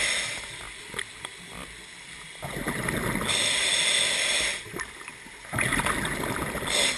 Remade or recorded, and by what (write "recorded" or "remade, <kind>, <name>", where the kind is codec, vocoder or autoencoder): recorded